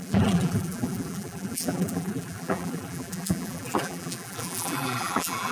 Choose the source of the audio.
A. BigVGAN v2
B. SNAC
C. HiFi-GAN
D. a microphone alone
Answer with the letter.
A